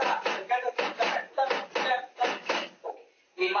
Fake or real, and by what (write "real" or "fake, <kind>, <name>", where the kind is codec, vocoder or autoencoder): real